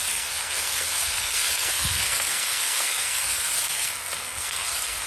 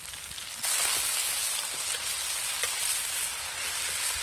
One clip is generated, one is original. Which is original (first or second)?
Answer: second